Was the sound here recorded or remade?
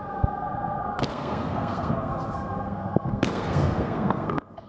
remade